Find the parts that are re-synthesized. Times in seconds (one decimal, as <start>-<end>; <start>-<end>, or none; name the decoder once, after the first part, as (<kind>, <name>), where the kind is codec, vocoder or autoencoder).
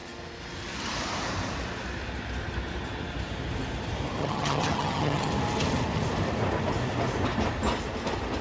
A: 4.2-5.3 (vocoder, HiFi-GAN)